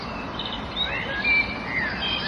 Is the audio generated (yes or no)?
no